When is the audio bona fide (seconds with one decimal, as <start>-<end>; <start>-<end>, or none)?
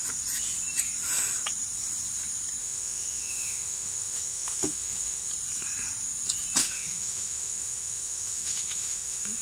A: 0.0-2.6; 5.3-6.6